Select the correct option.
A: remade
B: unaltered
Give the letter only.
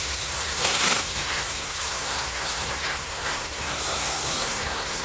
A